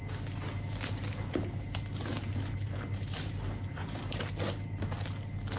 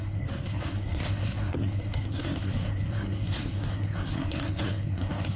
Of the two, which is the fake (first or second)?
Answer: second